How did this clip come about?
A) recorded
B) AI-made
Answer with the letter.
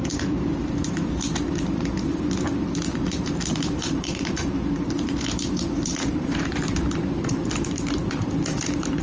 B